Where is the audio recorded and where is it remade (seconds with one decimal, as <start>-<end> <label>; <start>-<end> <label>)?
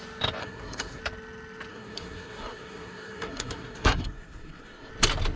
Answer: 0.0-0.4 recorded; 0.4-1.0 remade; 1.0-1.7 recorded; 1.7-4.9 remade; 4.9-5.4 recorded